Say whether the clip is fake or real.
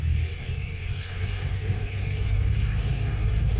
fake